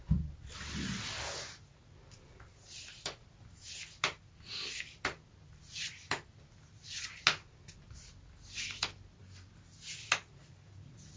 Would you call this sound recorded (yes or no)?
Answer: yes